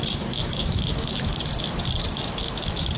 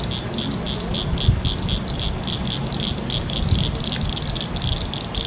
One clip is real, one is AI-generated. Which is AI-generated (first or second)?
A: first